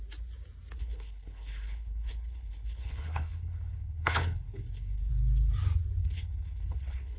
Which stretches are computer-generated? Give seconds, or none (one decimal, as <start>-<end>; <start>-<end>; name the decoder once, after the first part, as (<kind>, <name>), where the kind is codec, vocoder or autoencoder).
0.8-5.1 (codec, HILCodec); 6.0-7.2